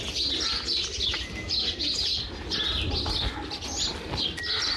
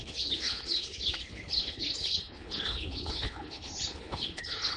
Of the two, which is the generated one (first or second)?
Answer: second